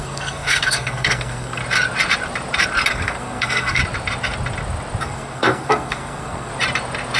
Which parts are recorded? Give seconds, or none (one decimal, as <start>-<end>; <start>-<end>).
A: 1.6-2.9; 3.8-5.0; 6.5-7.2